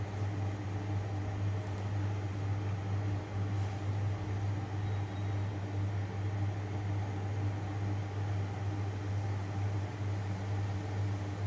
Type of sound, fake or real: real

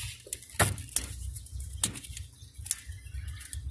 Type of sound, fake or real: real